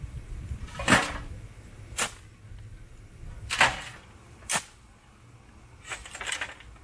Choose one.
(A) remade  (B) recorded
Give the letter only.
B